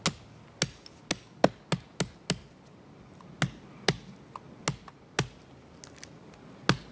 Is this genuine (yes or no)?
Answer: yes